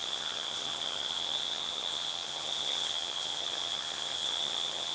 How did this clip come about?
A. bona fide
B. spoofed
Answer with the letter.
B